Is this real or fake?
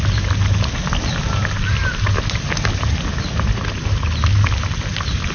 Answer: real